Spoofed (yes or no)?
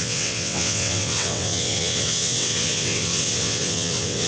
yes